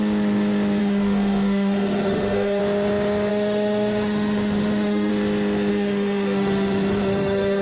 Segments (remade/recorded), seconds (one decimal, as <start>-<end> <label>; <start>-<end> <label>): 0.0-0.8 recorded; 0.8-2.6 remade; 2.6-3.3 recorded; 3.3-5.1 remade; 5.1-5.7 recorded; 5.7-7.6 remade